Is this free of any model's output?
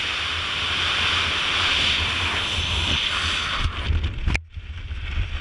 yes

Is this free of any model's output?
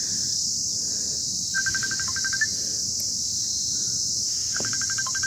yes